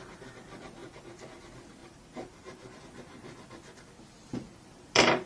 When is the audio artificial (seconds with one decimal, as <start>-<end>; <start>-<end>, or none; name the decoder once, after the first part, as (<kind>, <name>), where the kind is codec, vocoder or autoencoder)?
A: 1.8-2.8 (vocoder, BigVGAN v2); 4.3-5.3